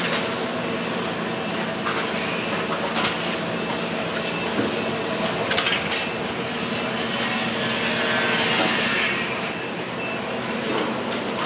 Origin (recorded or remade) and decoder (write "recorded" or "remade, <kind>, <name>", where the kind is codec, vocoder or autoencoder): recorded